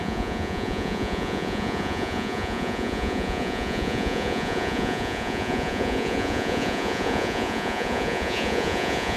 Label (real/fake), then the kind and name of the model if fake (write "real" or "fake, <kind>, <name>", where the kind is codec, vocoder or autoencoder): fake, vocoder, Vocos